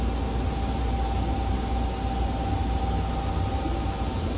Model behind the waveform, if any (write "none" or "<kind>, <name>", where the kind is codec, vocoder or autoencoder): none